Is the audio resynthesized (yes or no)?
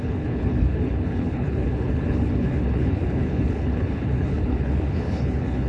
yes